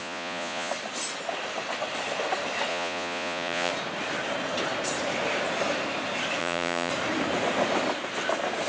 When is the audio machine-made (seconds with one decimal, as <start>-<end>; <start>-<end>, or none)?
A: 0.0-0.7; 2.7-3.7; 6.4-6.9